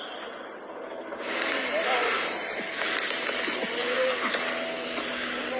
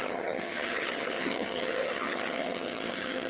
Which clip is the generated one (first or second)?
second